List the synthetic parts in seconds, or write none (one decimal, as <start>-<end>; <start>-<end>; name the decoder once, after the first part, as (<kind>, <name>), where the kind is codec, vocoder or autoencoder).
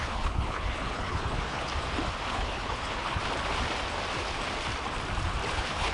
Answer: 0.0-1.7 (codec, HILCodec); 2.3-3.2; 5.5-5.9